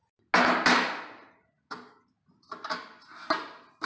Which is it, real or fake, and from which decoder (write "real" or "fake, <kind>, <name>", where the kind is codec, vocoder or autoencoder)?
real